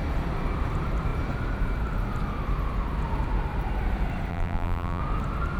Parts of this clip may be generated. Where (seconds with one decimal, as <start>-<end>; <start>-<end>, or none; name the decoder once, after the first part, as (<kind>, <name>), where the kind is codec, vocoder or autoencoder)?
4.3-5.0 (vocoder, BigVGAN v2)